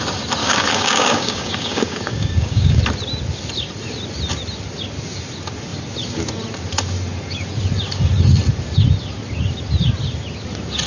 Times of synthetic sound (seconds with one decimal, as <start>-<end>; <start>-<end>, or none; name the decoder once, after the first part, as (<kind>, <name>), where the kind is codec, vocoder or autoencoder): 0.4-2.8 (codec, DAC)